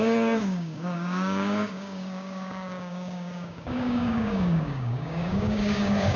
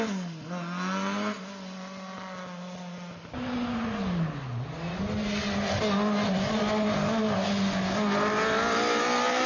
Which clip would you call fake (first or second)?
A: first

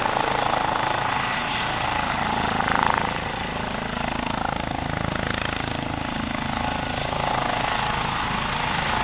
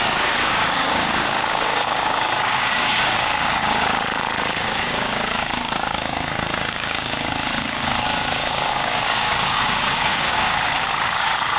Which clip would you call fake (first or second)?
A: second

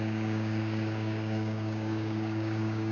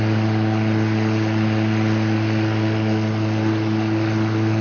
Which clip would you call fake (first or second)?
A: first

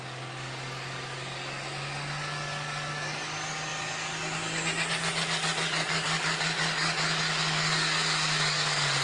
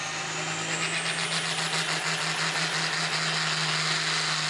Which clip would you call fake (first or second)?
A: first